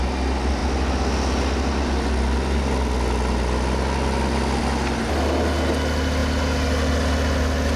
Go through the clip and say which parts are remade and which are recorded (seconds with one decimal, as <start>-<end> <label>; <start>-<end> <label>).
0.0-7.8 recorded